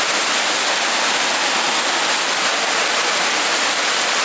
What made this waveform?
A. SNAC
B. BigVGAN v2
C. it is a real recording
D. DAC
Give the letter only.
C